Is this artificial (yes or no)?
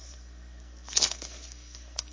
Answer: yes